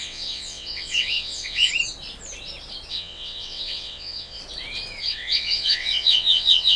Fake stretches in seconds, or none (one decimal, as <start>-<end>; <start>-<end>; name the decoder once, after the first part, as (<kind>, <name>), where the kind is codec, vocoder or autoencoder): 0.0-1.7 (vocoder, WaveNeXt); 2.9-4.4; 5.0-6.8